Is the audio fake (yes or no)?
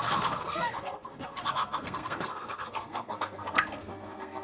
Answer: yes